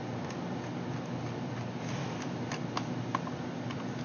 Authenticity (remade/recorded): recorded